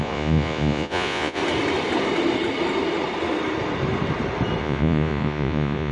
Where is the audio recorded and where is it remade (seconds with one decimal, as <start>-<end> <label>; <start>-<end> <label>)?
0.0-1.4 remade; 1.4-4.6 recorded; 4.6-5.9 remade

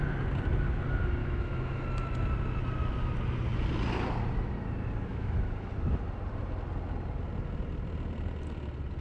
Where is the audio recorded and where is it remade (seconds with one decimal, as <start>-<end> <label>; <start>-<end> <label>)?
0.0-1.2 recorded; 1.2-1.8 remade; 1.8-5.1 recorded; 5.1-5.7 remade; 5.7-9.0 recorded